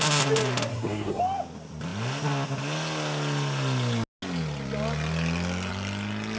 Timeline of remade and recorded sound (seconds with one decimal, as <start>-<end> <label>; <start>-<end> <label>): 0.0-0.7 recorded; 0.7-1.2 remade; 1.2-6.4 recorded

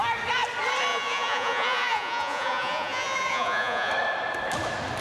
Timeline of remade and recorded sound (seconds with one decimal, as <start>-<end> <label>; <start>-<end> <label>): 0.0-0.9 recorded; 0.9-3.9 remade; 3.9-5.0 recorded

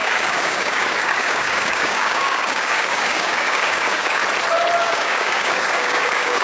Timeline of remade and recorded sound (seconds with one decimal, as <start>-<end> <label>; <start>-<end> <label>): 0.0-4.2 remade; 4.2-4.8 recorded; 4.8-6.4 remade

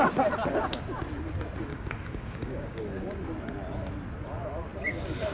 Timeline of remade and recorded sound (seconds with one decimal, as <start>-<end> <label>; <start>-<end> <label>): 0.0-1.7 recorded; 1.7-2.8 remade; 2.8-5.3 recorded

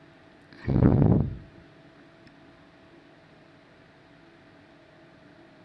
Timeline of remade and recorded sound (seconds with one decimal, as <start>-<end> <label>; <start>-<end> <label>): 0.0-0.6 recorded; 0.6-1.1 remade; 1.1-5.6 recorded

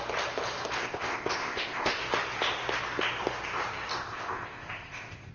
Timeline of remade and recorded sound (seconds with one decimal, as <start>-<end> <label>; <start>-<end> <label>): 0.0-0.8 recorded; 0.8-2.0 remade; 2.0-4.0 recorded; 4.0-5.3 remade